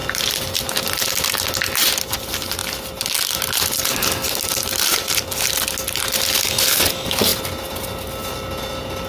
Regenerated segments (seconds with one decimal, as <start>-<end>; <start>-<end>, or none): 0.0-0.6